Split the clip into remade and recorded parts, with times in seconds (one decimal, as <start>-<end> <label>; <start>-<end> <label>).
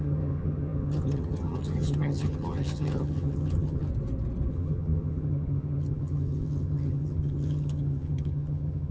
0.0-3.9 remade; 3.9-4.5 recorded; 4.5-8.9 remade